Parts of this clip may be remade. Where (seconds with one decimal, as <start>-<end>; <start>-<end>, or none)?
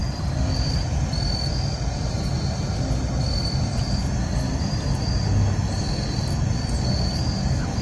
none